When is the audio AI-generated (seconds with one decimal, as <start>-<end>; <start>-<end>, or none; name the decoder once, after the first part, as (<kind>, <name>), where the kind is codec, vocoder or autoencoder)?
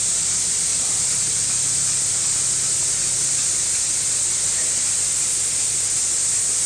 0.7-2.0 (vocoder, BigVGAN v2)